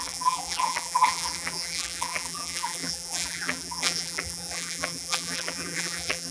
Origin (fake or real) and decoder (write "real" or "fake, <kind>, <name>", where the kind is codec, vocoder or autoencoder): fake, vocoder, BigVGAN v2